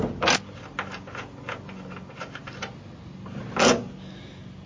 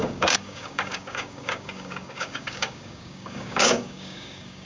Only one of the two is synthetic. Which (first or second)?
second